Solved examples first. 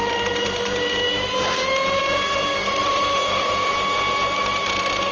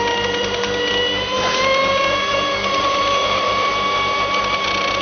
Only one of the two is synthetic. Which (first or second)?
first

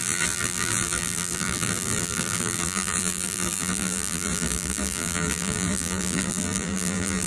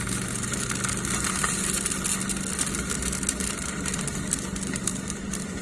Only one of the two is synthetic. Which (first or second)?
first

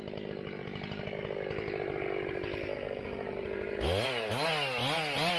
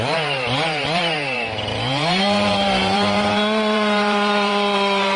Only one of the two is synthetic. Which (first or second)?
second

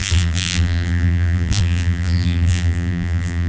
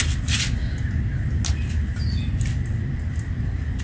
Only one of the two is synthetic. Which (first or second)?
first